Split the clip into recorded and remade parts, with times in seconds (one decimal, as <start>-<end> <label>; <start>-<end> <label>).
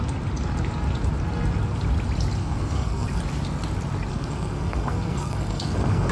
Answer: 0.0-2.4 recorded; 2.4-3.2 remade; 3.2-4.1 recorded; 4.1-6.1 remade